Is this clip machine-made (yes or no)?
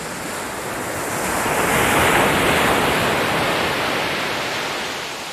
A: no